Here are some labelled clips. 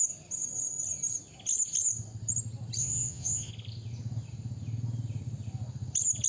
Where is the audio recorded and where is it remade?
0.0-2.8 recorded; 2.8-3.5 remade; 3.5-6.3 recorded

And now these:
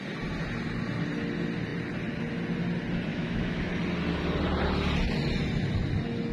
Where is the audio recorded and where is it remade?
0.0-3.1 recorded; 3.1-3.7 remade; 3.7-6.3 recorded